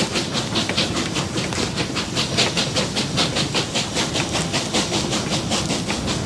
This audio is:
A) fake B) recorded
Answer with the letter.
B